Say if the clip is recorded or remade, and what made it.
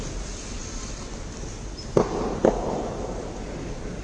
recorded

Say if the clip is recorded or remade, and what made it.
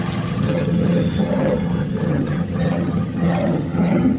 remade, vocoder, HiFi-GAN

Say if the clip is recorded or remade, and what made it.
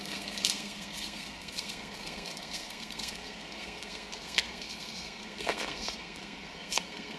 remade, codec, SNAC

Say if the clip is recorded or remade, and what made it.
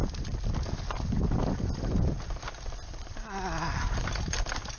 recorded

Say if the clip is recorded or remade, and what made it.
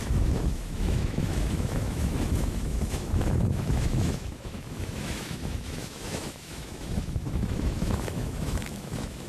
remade, autoencoder, DAC-VAE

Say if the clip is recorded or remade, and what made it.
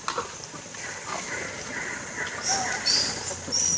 recorded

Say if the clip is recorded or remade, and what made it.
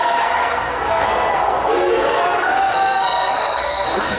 remade, codec, SNAC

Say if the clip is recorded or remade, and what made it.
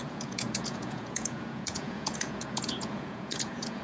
remade, vocoder, Vocos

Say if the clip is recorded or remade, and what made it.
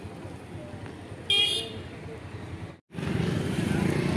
recorded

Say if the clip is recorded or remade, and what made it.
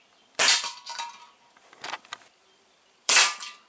remade, vocoder, BigVGAN v2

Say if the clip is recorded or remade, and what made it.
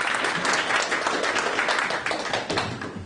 recorded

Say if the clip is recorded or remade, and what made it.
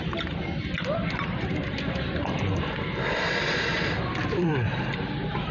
remade, vocoder, BigVGAN v2